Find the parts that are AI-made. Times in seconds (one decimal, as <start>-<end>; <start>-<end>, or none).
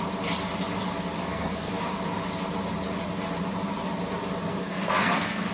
1.2-1.7; 4.5-5.5